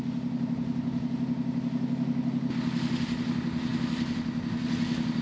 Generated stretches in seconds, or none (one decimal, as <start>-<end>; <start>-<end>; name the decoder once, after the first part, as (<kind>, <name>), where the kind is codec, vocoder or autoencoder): none